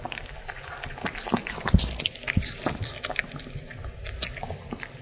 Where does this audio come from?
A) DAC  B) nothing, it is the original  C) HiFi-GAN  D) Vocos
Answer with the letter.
B